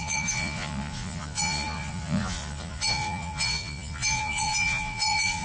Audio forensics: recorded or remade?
remade